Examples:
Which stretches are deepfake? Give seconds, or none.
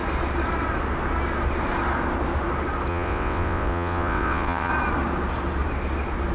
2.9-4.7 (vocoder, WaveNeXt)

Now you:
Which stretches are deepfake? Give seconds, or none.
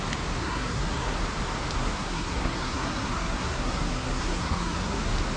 0.4-1.2 (codec, SNAC); 1.8-5.0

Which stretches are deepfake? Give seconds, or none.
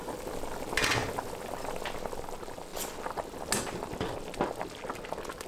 none